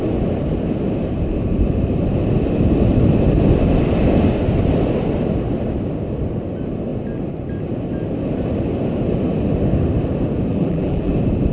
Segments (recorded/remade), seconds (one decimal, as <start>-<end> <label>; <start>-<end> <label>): 0.0-10.5 recorded; 10.5-11.1 remade; 11.1-11.5 recorded